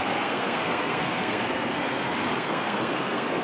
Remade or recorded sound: remade